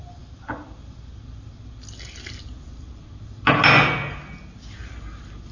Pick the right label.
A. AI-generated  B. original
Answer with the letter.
B